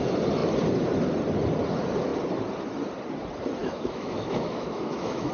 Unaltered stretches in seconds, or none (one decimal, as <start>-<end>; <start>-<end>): 0.0-3.6